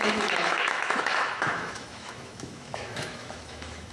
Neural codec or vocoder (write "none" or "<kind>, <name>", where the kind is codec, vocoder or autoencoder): autoencoder, DAC-VAE